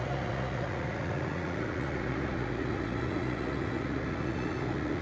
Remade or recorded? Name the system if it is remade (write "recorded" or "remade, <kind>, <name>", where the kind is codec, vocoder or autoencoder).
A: remade, vocoder, Vocos